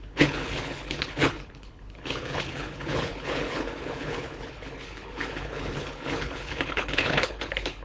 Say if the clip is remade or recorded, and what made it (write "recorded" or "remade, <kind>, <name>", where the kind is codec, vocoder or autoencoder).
remade, codec, HILCodec